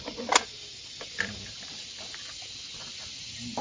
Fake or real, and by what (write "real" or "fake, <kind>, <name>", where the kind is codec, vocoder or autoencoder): real